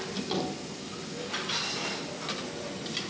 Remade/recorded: recorded